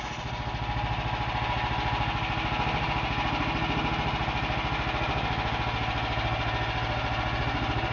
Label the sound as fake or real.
real